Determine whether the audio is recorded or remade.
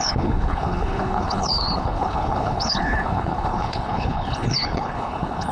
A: remade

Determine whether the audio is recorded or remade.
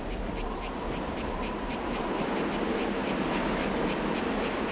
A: recorded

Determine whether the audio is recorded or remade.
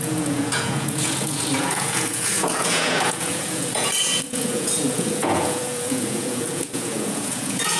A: remade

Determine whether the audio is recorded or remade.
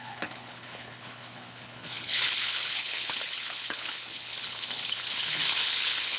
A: remade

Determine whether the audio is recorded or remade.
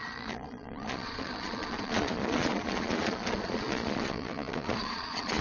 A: remade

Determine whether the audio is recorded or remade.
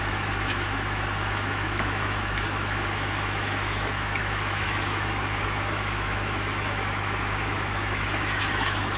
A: remade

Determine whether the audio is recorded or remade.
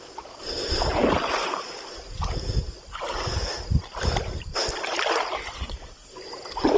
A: recorded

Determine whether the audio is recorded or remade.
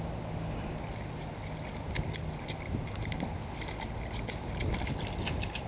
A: recorded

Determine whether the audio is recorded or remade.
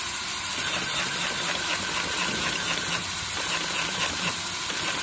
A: recorded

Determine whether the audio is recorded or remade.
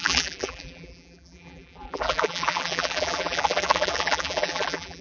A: remade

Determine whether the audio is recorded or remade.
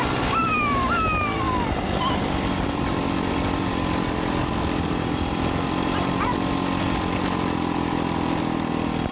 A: recorded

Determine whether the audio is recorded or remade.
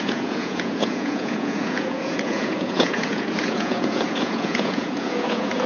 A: remade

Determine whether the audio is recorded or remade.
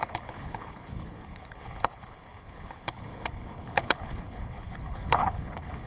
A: remade